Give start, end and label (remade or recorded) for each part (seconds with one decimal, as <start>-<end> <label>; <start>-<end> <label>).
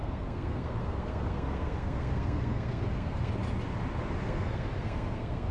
0.0-3.3 remade; 3.3-4.2 recorded; 4.2-5.5 remade